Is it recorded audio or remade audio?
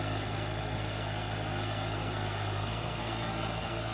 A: remade